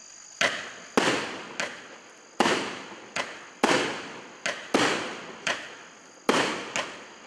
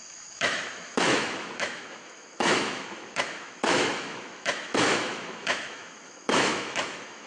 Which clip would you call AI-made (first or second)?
second